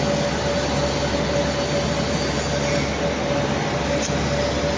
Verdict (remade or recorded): recorded